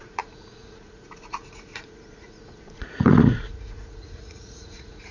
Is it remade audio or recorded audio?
remade